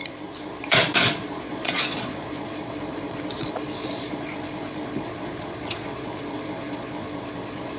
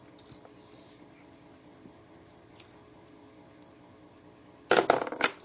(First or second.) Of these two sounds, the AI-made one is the first